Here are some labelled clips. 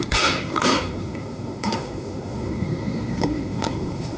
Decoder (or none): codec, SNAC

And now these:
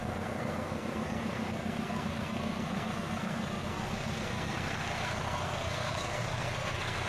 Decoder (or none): codec, SNAC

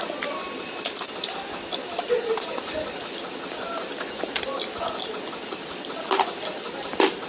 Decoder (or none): none